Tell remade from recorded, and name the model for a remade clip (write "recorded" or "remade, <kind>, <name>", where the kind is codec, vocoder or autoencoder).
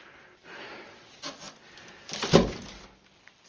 recorded